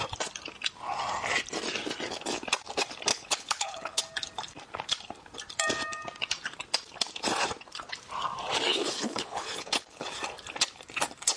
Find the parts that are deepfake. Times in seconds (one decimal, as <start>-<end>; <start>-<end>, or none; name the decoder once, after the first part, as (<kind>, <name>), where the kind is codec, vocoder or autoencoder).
3.1-4.0 (codec, HILCodec); 8.7-10.1